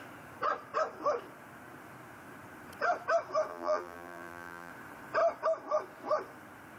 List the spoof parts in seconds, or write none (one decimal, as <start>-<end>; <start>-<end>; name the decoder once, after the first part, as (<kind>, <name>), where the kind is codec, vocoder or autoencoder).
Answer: 3.5-4.7 (vocoder, BigVGAN v2)